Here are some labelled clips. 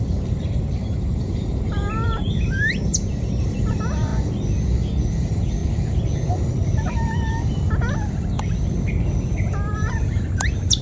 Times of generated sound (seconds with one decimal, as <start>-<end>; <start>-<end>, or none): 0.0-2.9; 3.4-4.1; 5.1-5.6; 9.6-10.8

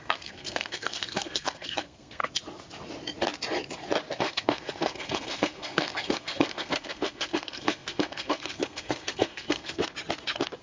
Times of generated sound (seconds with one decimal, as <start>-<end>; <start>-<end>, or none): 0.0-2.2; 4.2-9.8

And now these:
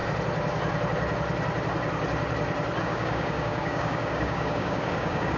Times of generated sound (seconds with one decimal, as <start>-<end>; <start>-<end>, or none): 2.8-5.4